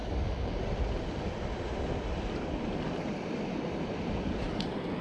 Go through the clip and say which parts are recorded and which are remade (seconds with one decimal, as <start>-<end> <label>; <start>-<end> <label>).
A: 0.0-0.6 remade; 0.6-5.0 recorded